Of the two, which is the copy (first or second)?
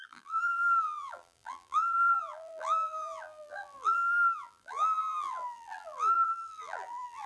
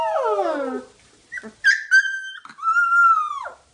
first